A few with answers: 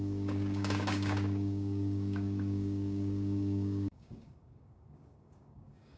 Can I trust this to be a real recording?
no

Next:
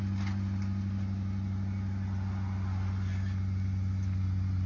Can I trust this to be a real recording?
yes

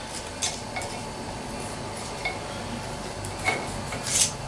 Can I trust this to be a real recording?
yes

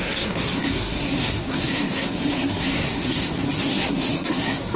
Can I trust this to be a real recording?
no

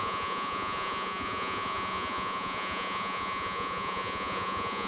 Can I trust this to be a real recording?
no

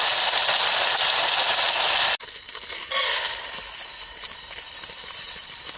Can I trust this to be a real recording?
yes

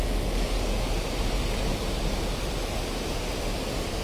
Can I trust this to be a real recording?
yes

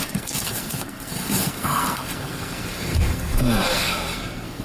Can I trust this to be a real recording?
no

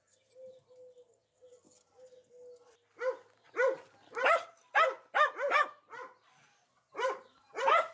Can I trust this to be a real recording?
yes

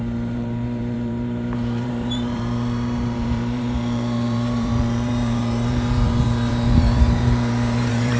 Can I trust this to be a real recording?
no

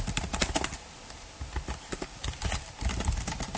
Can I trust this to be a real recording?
yes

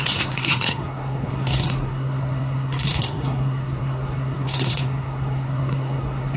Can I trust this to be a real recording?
no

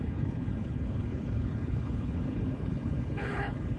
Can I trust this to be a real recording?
no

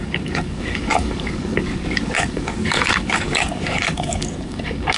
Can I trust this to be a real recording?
no